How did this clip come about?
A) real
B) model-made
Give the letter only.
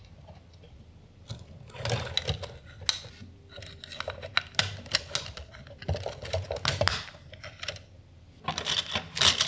A